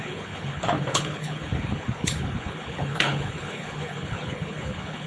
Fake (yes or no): yes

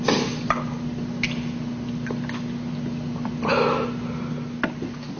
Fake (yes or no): no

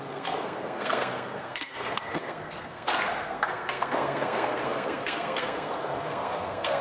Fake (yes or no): yes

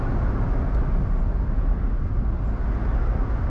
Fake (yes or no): no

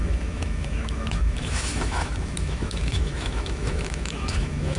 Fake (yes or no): yes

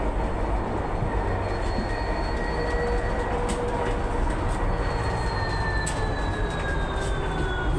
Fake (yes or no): no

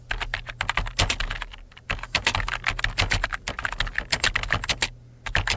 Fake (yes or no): no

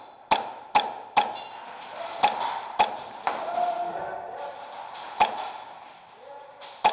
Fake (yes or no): no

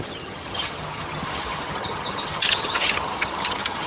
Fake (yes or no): yes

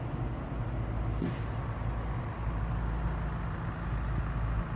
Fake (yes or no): no